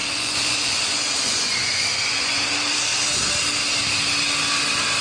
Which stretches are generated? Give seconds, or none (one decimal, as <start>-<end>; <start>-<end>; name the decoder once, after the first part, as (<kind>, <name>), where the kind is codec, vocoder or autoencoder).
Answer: 0.0-2.5 (vocoder, Vocos)